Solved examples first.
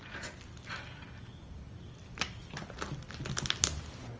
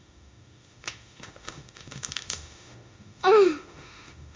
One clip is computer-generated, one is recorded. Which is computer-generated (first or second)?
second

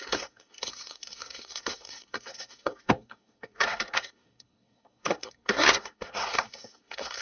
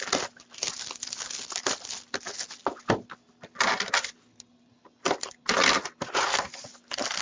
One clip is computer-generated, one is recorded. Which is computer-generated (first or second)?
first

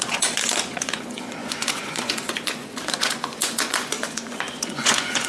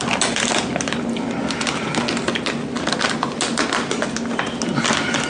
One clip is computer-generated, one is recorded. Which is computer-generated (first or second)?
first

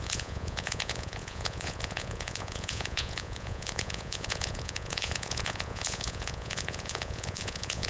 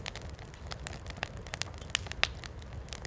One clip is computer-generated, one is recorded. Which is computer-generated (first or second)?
first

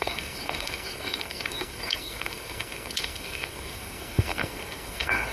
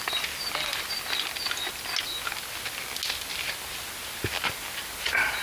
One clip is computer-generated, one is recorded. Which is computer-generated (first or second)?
first